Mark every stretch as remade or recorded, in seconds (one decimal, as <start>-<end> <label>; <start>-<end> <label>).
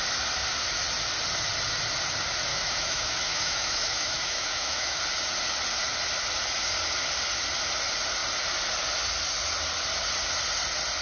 0.0-2.5 recorded; 2.5-5.0 remade; 5.0-11.0 recorded